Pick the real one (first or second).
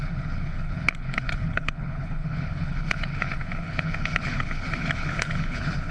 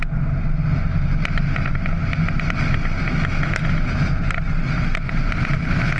second